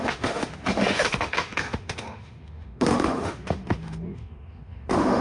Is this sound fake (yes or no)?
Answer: yes